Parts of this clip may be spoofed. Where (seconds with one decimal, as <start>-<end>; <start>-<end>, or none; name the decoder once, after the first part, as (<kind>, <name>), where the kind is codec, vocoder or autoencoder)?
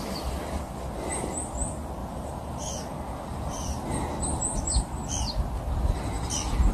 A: none